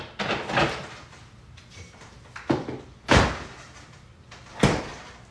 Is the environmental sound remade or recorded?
recorded